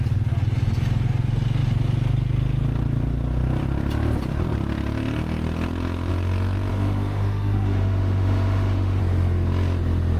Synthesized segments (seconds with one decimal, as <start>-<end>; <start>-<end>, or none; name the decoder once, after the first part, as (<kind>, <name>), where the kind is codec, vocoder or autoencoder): 6.7-9.0 (autoencoder, DAC-VAE)